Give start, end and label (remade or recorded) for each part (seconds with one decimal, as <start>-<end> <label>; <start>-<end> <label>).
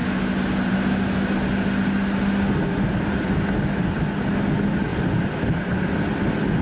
0.0-6.6 recorded